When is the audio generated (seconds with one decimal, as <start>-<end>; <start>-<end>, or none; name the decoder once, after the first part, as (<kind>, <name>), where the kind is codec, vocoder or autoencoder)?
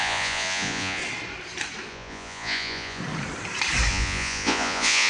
0.0-1.0 (vocoder, Vocos); 1.9-3.0; 3.9-5.1